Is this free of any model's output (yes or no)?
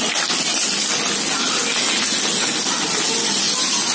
yes